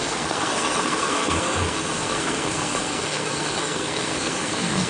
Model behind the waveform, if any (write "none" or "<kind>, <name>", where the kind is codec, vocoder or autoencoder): codec, SNAC